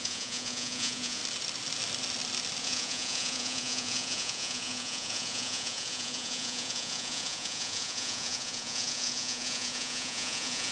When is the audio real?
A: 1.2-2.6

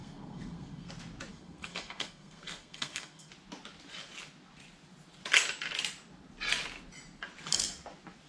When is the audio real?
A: 0.9-1.3; 3.3-8.3

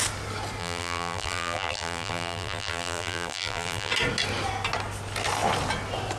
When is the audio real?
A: 0.0-0.6; 3.9-6.2

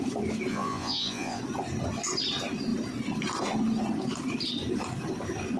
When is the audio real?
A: 0.0-0.5; 1.4-5.6

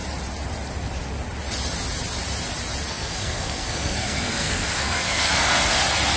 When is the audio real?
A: 0.0-2.9; 5.8-6.2